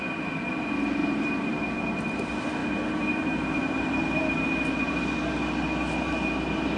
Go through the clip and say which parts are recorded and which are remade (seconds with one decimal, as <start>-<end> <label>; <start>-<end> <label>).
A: 0.0-1.0 recorded; 1.0-2.0 remade; 2.0-2.6 recorded; 2.6-4.2 remade; 4.2-6.8 recorded